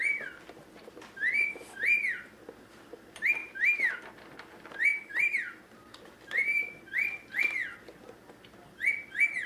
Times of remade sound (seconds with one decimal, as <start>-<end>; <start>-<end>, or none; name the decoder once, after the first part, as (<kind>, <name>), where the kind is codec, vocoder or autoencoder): 3.4-4.0 (vocoder, BigVGAN v2); 4.9-6.1